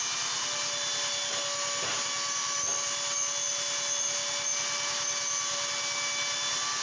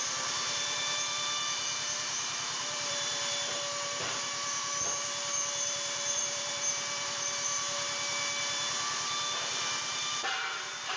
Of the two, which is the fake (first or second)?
second